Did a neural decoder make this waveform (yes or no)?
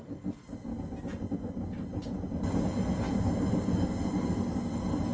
no